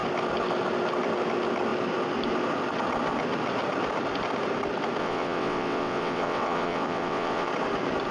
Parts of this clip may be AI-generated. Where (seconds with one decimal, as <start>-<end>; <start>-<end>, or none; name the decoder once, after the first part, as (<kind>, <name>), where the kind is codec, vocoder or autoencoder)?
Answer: 5.0-7.5 (vocoder, WaveNeXt)